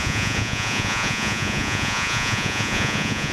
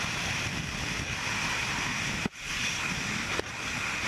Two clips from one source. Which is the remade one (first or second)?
first